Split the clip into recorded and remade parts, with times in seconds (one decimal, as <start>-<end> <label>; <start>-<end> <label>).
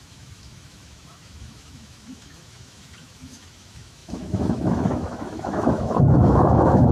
0.0-6.9 remade